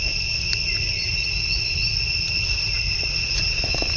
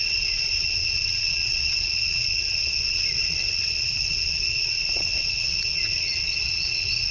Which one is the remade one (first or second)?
second